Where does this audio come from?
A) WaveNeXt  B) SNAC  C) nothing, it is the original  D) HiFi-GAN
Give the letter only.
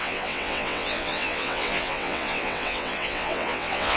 A